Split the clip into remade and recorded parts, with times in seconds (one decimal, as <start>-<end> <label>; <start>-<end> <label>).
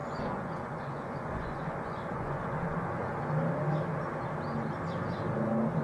0.0-3.1 remade; 3.1-5.8 recorded